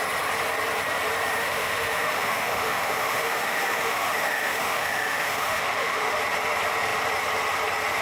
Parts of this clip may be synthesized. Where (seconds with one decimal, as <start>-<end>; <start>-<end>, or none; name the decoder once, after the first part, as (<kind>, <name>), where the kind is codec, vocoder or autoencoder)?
1.4-6.2 (autoencoder, DAC-VAE)